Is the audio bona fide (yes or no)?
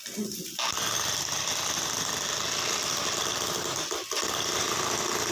yes